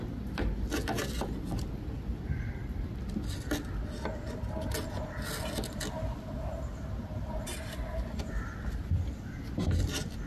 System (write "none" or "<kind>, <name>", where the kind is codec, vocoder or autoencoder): none